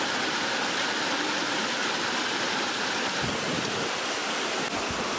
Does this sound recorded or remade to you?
recorded